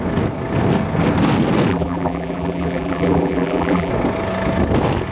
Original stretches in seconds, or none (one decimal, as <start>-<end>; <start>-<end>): 0.0-1.7; 3.9-5.1